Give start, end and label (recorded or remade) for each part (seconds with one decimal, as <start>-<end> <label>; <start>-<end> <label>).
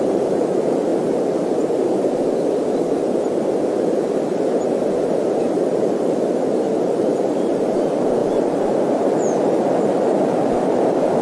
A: 0.0-0.9 remade; 0.9-3.8 recorded; 3.8-4.5 remade; 4.5-5.3 recorded; 5.3-11.2 remade